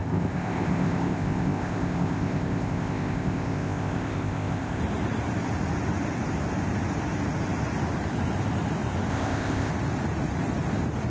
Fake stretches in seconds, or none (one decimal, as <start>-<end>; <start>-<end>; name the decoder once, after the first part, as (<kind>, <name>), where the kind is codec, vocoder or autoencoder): 0.0-4.8 (codec, ZipCodec); 9.1-9.7